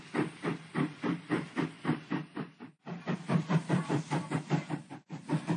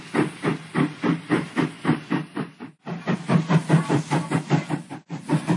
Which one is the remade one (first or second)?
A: first